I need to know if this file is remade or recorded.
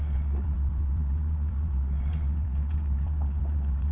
remade